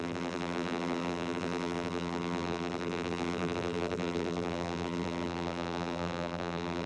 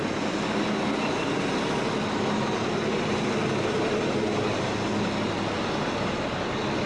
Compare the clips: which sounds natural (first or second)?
second